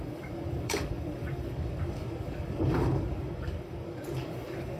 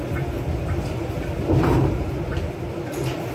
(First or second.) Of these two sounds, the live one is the second